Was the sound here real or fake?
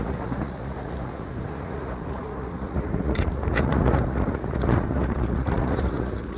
fake